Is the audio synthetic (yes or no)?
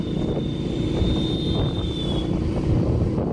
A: no